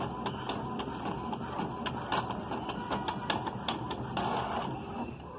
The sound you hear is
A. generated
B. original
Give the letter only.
B